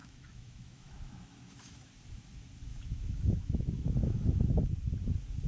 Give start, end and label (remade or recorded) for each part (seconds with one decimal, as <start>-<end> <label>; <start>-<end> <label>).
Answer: 0.0-1.9 remade; 1.9-2.7 recorded; 2.7-4.4 remade; 4.4-5.5 recorded